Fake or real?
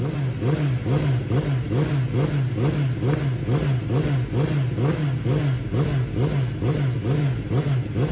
real